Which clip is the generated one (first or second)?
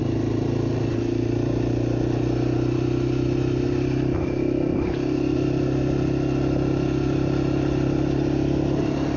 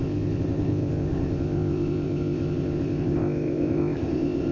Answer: second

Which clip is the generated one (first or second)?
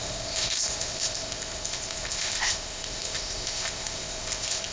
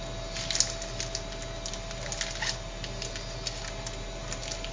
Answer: first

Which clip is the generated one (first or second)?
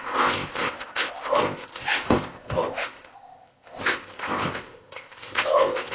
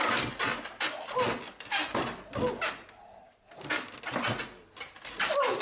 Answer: first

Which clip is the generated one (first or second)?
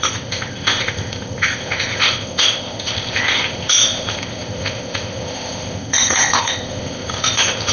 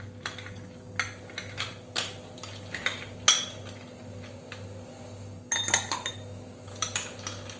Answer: first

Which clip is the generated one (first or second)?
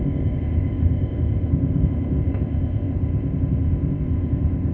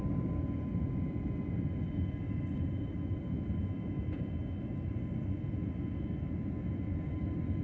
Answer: first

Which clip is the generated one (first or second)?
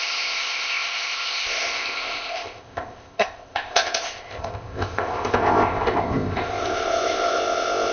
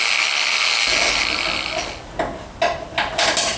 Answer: first